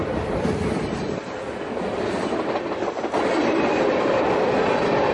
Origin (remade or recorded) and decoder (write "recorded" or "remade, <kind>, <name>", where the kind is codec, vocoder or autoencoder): recorded